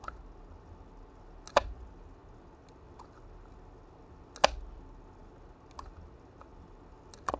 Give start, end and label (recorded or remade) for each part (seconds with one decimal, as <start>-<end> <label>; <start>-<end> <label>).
0.0-7.4 recorded